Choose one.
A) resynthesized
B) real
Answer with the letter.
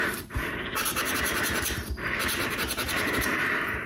A